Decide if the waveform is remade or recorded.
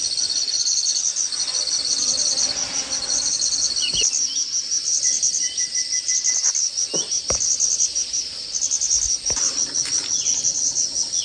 recorded